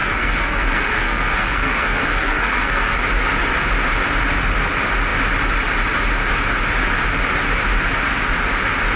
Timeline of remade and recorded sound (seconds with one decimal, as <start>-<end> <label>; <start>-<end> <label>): 0.0-3.0 remade; 3.0-9.0 recorded